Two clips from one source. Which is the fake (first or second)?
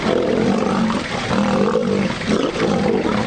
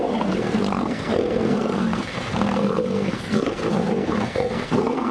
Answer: second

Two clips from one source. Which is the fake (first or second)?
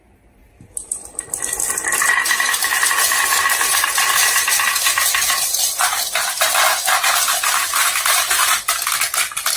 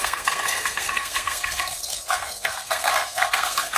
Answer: second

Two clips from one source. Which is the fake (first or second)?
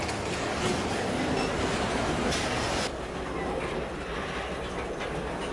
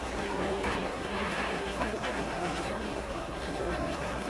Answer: second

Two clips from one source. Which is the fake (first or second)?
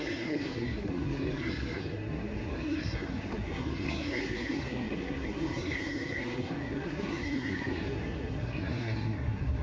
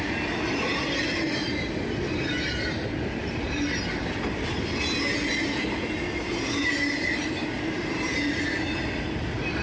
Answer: first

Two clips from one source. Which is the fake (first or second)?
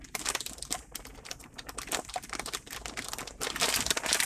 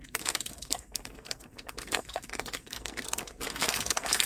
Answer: second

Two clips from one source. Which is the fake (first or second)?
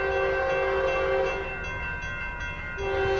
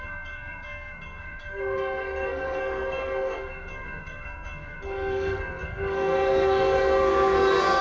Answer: second